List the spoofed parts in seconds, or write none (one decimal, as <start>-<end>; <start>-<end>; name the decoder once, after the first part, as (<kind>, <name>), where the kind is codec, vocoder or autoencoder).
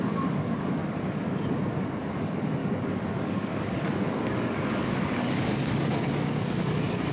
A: 0.0-0.8 (codec, DAC); 2.0-7.1